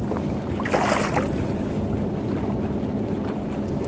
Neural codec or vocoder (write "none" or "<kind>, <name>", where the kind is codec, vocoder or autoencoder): none